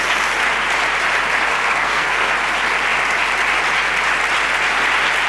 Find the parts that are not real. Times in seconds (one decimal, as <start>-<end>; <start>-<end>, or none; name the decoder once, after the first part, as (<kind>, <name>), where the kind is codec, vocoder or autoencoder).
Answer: 1.5-2.3 (codec, SNAC)